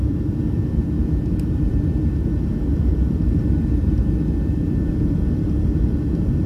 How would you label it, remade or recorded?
remade